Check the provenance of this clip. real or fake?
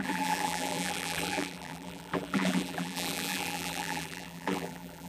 fake